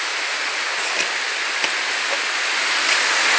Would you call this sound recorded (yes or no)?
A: yes